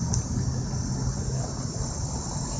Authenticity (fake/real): real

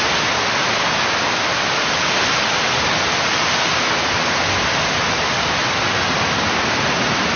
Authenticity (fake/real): real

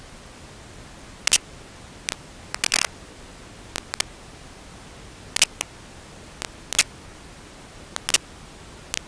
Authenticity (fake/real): real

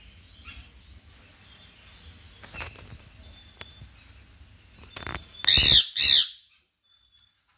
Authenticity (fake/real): real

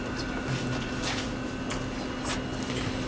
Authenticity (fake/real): real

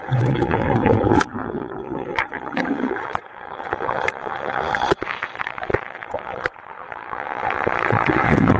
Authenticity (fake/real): fake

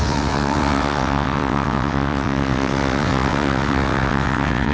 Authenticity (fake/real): fake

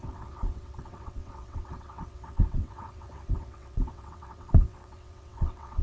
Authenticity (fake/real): fake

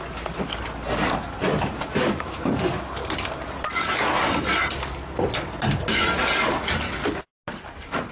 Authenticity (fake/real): real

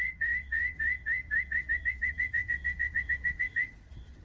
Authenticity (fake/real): fake